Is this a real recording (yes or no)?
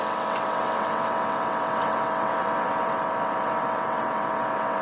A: no